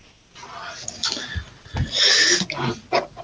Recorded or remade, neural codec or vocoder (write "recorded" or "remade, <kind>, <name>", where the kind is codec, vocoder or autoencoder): recorded